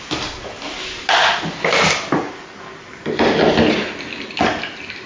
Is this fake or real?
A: real